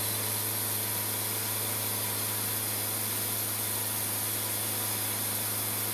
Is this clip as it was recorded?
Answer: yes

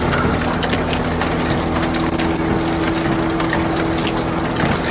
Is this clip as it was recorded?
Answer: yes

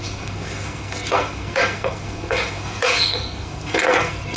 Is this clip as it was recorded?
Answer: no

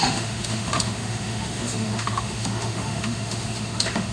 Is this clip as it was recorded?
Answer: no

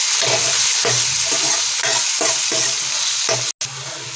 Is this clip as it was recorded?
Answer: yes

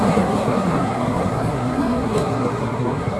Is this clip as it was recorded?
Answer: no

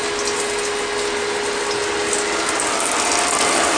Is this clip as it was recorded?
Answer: yes